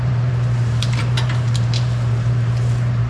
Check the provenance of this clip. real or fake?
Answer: fake